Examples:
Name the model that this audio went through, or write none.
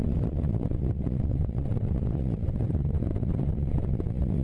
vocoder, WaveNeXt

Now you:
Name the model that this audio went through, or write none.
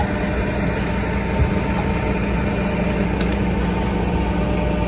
none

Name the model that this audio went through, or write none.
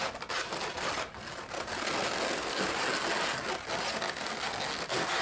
none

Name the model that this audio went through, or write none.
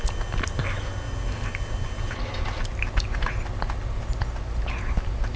none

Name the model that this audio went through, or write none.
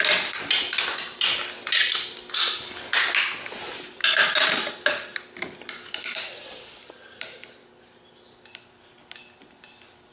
none